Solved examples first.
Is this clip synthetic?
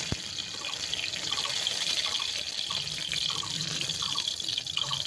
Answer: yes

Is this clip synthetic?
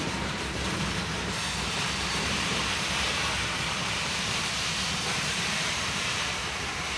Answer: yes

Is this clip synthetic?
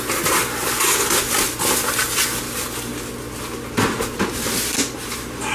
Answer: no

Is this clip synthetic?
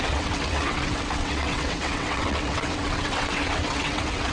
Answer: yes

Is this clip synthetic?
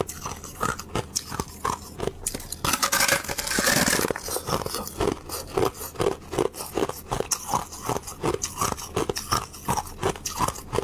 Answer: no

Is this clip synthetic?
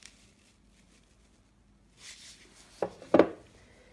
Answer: no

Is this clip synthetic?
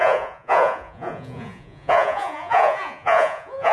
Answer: yes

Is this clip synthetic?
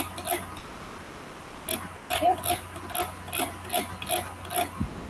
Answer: no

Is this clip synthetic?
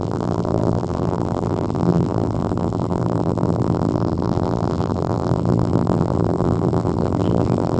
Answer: yes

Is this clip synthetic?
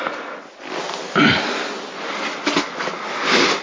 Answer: no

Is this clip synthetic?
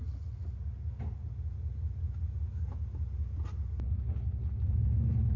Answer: no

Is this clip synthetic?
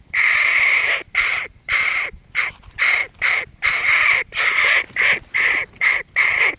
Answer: yes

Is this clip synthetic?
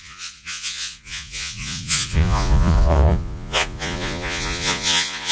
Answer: yes